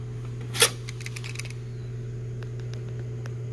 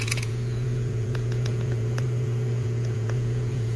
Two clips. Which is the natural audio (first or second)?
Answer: first